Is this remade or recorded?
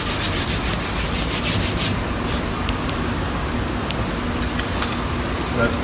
recorded